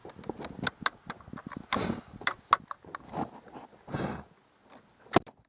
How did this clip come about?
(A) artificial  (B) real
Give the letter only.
B